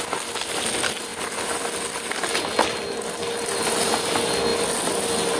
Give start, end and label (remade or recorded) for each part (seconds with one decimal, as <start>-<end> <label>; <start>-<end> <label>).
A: 0.0-5.4 recorded